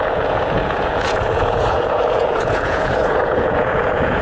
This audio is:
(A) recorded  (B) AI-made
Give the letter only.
B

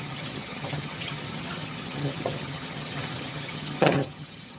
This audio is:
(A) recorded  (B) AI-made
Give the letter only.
B